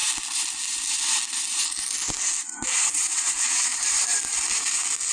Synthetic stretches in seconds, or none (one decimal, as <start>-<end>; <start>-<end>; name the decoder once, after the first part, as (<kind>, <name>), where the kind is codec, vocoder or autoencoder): 2.9-3.7 (vocoder, WaveNeXt)